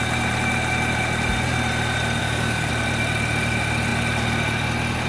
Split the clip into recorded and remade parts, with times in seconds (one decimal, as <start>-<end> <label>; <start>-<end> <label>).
0.0-2.2 recorded; 2.2-2.7 remade; 2.7-5.1 recorded